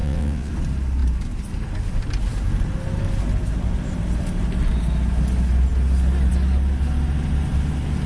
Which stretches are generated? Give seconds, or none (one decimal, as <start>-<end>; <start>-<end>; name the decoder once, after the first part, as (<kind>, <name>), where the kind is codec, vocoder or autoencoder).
0.0-0.5 (vocoder, WaveNeXt)